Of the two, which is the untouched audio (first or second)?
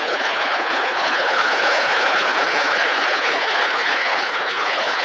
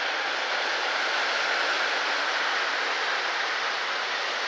second